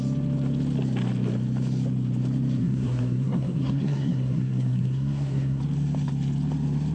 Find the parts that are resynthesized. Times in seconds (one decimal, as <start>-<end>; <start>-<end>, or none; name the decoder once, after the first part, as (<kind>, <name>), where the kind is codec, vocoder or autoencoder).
2.6-5.6 (codec, SNAC)